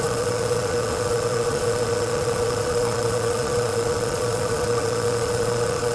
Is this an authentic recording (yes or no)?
no